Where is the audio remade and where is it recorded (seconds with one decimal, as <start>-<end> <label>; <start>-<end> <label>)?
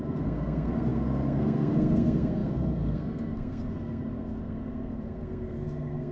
0.0-6.1 remade